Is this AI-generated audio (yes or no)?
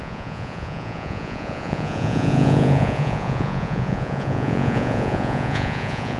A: yes